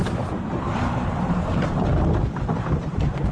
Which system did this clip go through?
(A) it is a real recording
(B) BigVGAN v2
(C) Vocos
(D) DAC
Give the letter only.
B